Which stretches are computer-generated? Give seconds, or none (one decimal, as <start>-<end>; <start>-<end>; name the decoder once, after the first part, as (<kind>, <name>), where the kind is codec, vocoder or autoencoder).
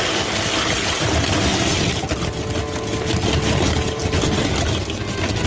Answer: none